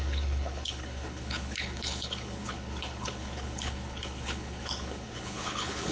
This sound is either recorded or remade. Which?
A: remade